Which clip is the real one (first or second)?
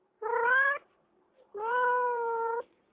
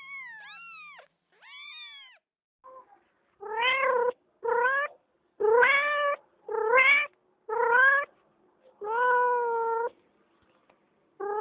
second